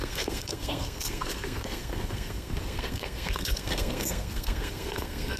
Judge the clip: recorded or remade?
remade